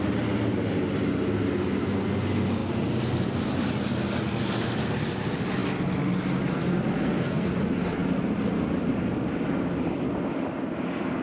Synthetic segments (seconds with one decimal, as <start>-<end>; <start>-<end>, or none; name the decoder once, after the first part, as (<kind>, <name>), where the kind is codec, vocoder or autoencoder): 6.9-7.5 (codec, SNAC)